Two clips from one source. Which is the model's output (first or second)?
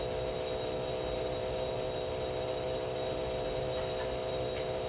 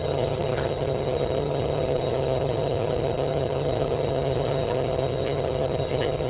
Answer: second